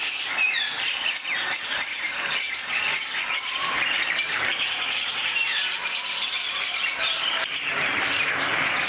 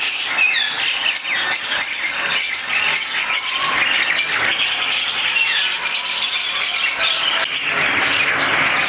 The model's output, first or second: first